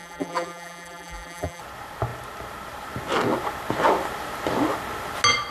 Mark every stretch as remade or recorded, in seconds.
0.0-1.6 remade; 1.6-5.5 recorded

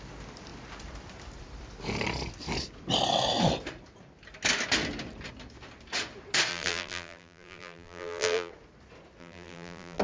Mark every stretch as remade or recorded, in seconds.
0.0-6.5 recorded; 6.5-8.5 remade; 8.5-9.2 recorded; 9.2-10.0 remade

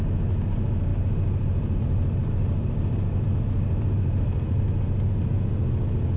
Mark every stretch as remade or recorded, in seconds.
0.0-0.9 recorded; 0.9-4.6 remade; 4.6-6.2 recorded

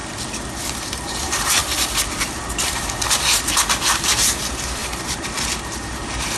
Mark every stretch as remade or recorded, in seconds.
0.0-0.8 recorded; 0.8-1.6 remade; 1.6-2.2 recorded; 2.2-6.4 remade

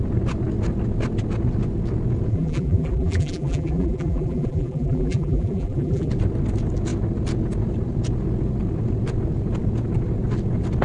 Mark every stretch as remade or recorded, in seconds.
0.0-2.3 recorded; 2.3-6.1 remade; 6.1-10.8 recorded

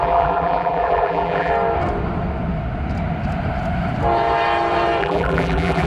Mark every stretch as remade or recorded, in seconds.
0.0-1.5 remade; 1.5-5.0 recorded; 5.0-5.9 remade

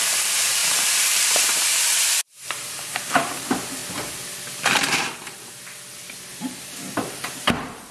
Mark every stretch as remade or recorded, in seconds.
0.0-3.8 remade; 3.8-6.6 recorded; 6.6-7.9 remade